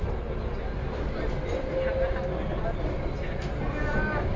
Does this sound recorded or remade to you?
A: recorded